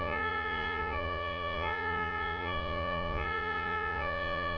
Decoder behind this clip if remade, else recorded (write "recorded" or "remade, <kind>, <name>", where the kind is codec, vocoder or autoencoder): remade, vocoder, Vocos